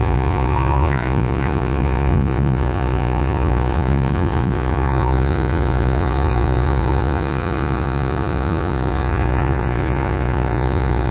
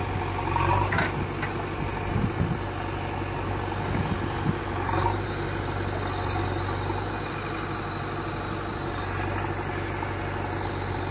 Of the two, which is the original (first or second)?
second